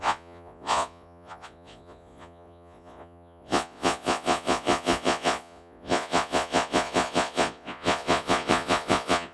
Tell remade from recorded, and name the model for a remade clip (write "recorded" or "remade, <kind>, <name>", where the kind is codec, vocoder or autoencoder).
remade, vocoder, Vocos